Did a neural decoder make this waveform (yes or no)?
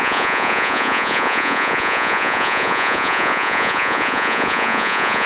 yes